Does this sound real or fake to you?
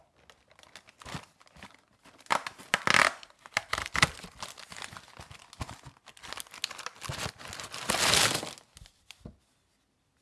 real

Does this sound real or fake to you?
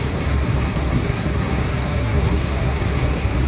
fake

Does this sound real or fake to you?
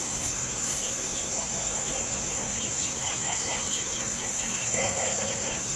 fake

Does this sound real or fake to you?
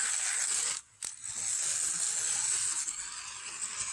real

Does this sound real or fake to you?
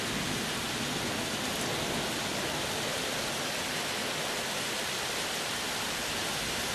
real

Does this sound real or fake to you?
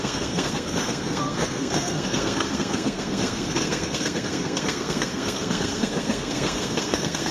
fake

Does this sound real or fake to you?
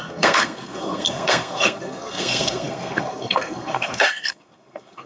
fake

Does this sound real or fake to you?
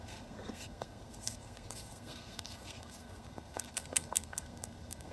fake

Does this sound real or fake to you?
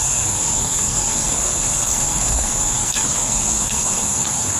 fake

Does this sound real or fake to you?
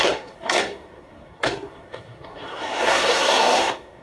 fake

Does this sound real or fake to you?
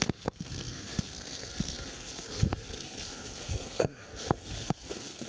fake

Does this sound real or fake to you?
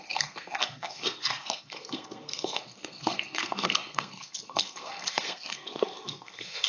fake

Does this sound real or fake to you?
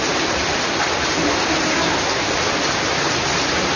real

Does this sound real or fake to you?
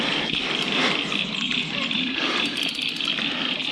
real